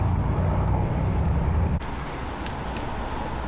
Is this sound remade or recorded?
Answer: recorded